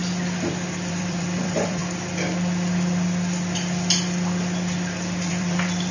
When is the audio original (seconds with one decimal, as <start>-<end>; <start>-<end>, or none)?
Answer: 0.0-0.9; 1.8-5.3